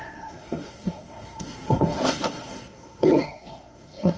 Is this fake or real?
fake